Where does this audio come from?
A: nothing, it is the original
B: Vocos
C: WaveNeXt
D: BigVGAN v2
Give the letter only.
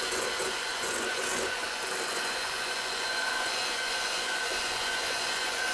B